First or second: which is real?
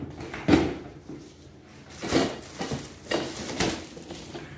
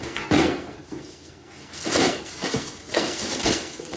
first